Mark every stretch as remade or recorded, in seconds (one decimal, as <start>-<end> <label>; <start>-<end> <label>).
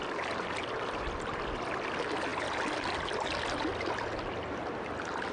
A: 0.0-5.3 recorded